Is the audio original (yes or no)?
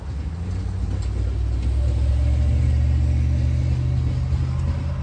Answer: yes